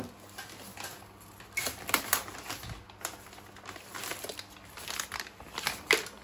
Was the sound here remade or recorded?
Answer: recorded